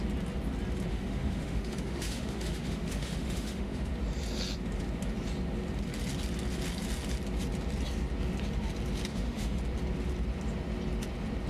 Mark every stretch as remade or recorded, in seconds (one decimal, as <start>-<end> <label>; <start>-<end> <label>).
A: 0.0-0.9 recorded; 0.9-3.9 remade; 3.9-9.1 recorded; 9.1-9.6 remade; 9.6-11.5 recorded